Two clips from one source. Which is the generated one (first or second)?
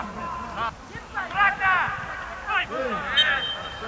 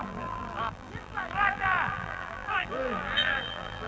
second